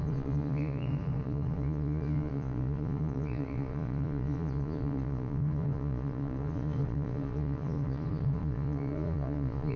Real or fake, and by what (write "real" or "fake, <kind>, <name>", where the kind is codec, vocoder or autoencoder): fake, vocoder, Vocos